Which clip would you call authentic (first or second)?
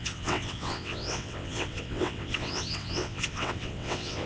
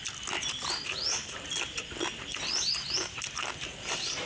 second